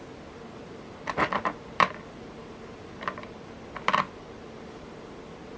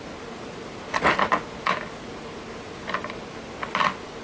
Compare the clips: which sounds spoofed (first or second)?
first